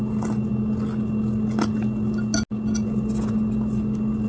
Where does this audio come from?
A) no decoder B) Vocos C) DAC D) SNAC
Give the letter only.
A